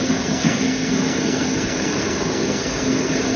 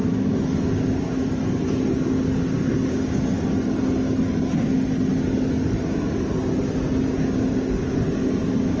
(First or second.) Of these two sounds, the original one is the second